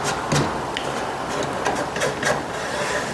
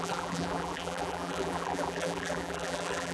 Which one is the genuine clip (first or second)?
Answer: first